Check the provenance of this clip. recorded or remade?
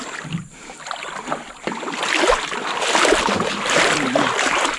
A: remade